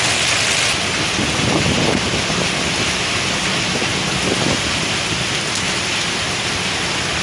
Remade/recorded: recorded